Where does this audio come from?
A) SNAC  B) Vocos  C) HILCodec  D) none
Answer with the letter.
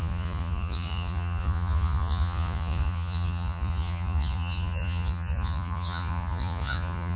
B